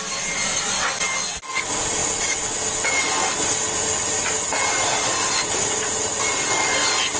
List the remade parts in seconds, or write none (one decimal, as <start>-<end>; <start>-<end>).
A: none